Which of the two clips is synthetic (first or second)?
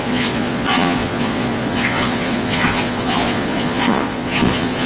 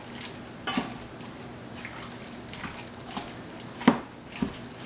first